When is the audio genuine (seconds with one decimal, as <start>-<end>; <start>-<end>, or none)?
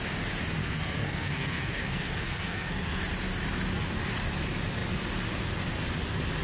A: 0.0-0.6; 3.0-6.4